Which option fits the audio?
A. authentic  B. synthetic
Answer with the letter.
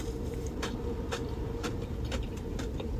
B